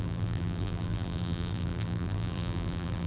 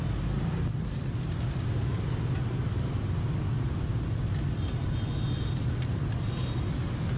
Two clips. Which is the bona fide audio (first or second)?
second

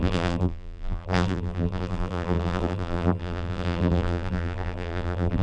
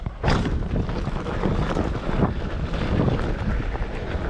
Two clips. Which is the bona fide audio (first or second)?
second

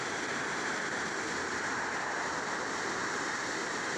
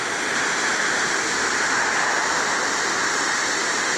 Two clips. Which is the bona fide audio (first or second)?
second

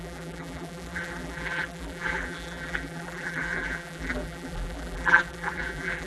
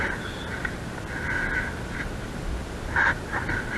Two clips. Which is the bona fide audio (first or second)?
second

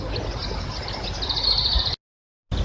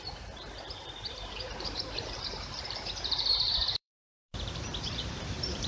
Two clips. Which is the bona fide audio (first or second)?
first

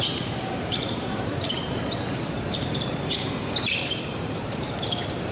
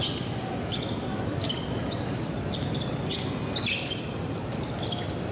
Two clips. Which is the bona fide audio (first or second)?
second